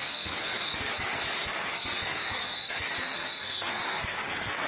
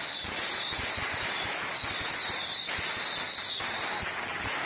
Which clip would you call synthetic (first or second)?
first